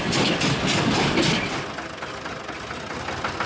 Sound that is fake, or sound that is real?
real